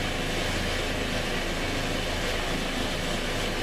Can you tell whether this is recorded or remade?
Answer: recorded